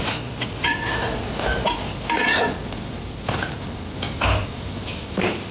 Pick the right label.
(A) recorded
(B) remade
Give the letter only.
A